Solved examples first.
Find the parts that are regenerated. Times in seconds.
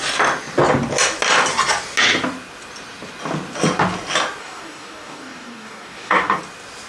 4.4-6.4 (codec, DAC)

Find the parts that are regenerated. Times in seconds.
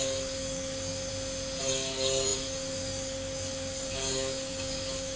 0.0-1.1 (codec, DAC); 1.6-5.2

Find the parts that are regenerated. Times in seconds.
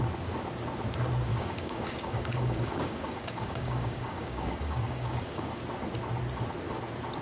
1.3-5.6 (codec, DAC)